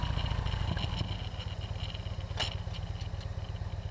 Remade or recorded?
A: recorded